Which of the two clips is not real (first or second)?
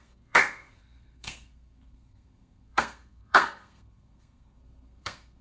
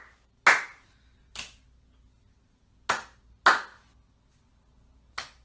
first